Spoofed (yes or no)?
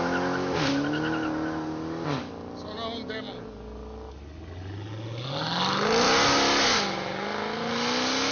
no